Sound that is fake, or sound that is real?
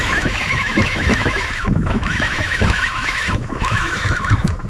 fake